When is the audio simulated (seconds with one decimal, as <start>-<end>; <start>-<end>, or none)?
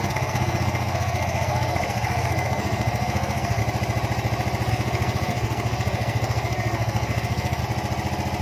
0.0-3.6; 4.7-7.6